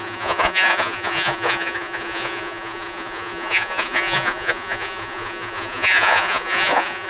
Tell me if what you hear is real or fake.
fake